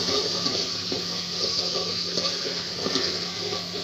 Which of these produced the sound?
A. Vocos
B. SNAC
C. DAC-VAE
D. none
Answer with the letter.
B